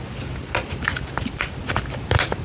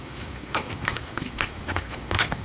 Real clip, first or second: first